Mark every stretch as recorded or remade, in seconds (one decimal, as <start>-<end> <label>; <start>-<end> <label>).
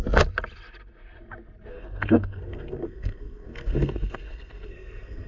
0.0-1.7 recorded; 1.7-5.3 remade